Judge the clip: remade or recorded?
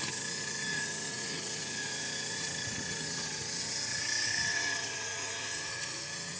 remade